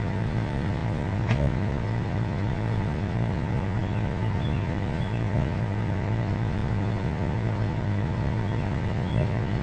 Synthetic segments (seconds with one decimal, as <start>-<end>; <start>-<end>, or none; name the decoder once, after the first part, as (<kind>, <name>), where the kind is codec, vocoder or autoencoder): 0.0-9.6 (vocoder, Vocos)